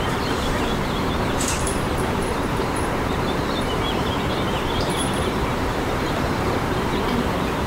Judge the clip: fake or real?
fake